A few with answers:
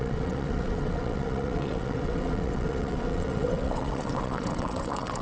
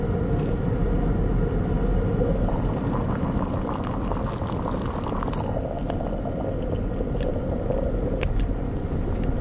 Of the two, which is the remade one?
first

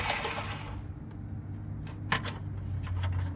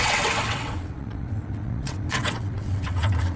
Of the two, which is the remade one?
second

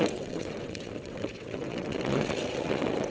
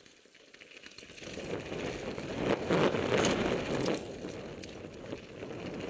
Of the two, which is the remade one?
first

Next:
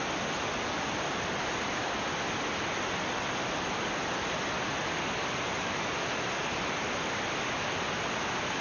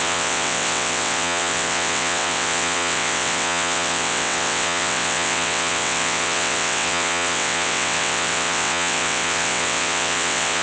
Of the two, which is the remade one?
second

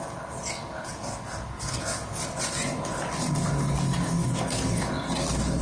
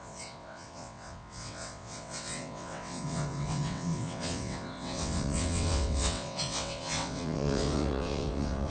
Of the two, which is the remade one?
second